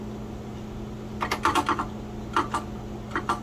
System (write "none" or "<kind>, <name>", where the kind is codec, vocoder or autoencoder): none